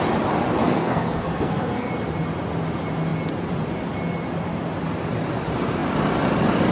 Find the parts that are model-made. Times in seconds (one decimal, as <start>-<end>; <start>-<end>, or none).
0.6-1.9